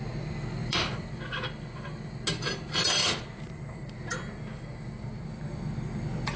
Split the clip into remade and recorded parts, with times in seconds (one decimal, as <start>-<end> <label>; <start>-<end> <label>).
0.0-0.6 recorded; 0.6-1.1 remade; 1.1-3.0 recorded; 3.0-4.0 remade; 4.0-6.4 recorded